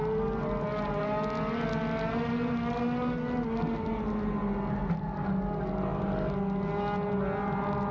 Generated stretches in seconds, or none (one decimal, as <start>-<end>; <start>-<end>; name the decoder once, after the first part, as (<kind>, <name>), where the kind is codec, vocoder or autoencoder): none